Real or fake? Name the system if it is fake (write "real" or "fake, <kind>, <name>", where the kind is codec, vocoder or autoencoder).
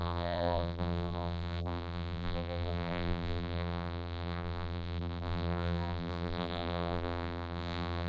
fake, vocoder, BigVGAN v2